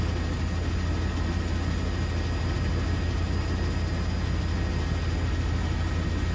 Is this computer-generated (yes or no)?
no